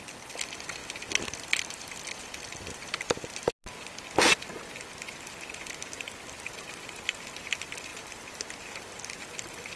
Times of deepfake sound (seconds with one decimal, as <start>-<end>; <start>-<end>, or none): none